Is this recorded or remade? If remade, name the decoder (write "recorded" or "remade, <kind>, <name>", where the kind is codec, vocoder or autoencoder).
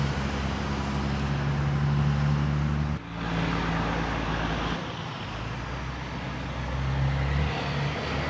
recorded